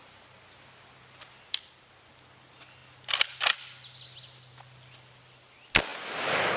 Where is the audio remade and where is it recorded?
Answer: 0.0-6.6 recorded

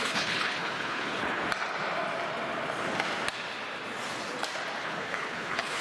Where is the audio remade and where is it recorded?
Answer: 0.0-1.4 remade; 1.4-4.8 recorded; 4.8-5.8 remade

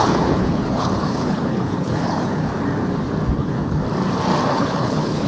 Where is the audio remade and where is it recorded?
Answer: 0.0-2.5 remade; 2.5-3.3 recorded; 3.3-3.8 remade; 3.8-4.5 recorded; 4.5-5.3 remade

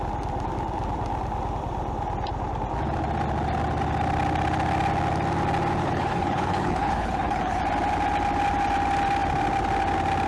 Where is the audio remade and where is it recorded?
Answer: 0.0-5.8 recorded; 5.8-7.6 remade; 7.6-10.3 recorded

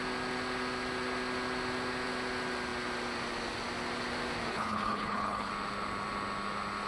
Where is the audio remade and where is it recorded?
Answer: 0.0-4.5 recorded; 4.5-5.5 remade; 5.5-6.9 recorded